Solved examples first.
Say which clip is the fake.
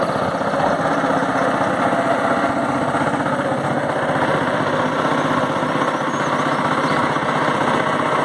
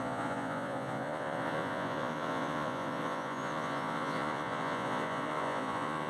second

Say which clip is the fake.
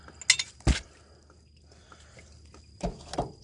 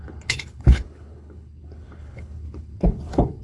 second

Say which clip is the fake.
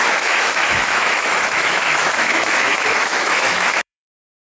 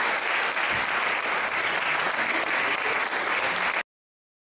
first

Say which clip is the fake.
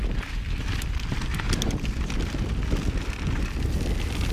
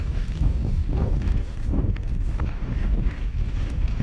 second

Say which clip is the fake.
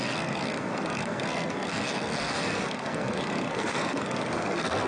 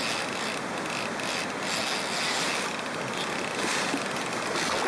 first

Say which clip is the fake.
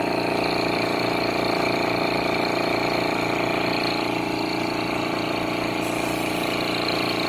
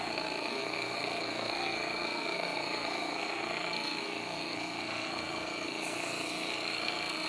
second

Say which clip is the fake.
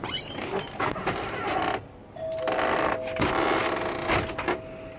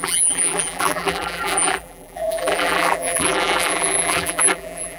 second